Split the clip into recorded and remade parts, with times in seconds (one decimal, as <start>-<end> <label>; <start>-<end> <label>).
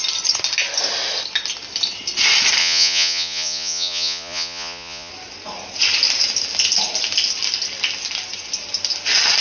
0.0-2.6 recorded; 2.6-5.1 remade; 5.1-9.4 recorded